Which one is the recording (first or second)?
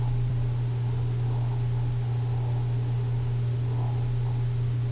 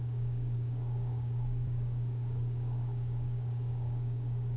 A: first